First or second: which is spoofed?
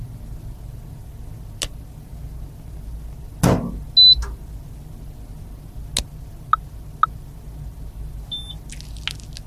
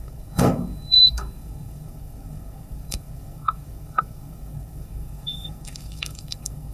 second